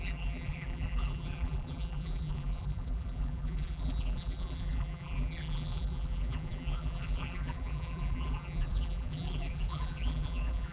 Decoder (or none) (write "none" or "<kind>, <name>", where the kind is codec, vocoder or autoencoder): vocoder, BigVGAN v2